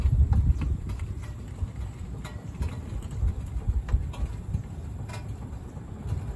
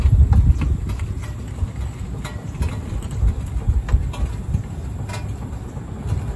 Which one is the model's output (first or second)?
first